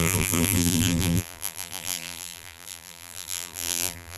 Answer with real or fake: fake